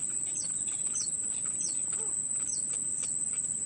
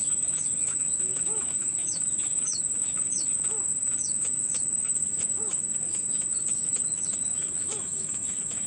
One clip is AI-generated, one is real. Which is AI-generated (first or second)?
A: second